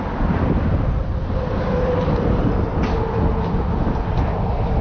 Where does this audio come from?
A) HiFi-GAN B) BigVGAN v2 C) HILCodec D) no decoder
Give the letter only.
D